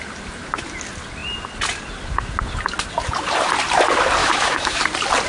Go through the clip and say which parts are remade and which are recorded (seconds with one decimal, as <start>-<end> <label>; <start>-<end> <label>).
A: 0.0-4.2 recorded; 4.2-4.8 remade; 4.8-5.3 recorded